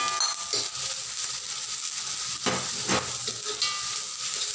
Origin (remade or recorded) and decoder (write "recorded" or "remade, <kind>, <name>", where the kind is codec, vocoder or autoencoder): recorded